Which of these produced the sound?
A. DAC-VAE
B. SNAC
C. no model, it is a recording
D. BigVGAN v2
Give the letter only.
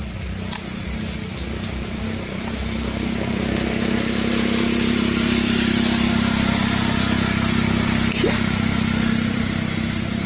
C